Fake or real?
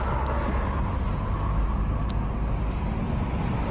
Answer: real